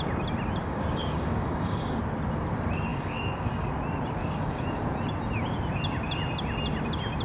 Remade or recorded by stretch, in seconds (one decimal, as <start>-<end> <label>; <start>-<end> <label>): 0.0-0.6 recorded; 0.6-2.0 remade; 2.0-2.9 recorded; 2.9-3.7 remade; 3.7-4.2 recorded; 4.2-4.8 remade; 4.8-7.2 recorded